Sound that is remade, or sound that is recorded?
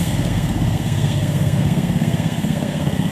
remade